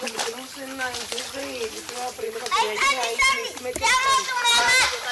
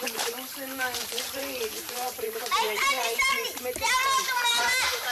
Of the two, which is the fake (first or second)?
second